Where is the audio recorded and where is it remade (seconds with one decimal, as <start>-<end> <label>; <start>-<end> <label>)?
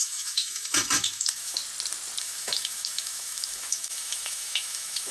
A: 0.0-1.6 remade; 1.6-2.2 recorded; 2.2-5.1 remade